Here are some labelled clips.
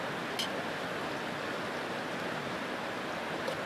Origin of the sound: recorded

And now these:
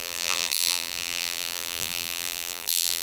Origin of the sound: remade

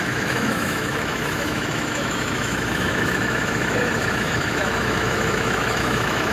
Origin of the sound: remade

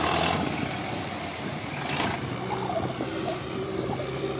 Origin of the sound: recorded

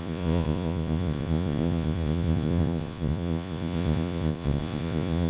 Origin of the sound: remade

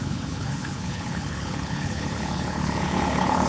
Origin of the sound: remade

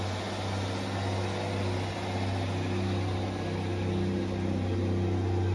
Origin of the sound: recorded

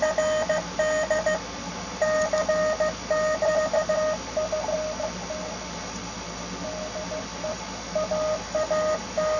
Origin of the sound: recorded